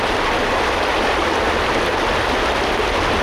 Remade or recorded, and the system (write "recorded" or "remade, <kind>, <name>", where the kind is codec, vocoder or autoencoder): recorded